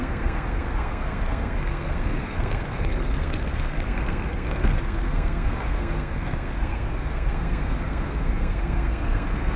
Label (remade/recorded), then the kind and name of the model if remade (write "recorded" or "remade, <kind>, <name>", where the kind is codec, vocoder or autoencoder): remade, codec, SNAC